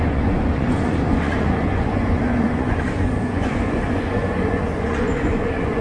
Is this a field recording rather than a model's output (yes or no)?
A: no